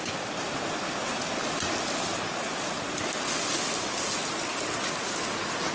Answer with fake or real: real